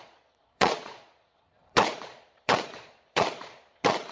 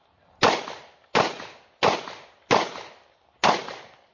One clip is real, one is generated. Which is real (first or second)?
second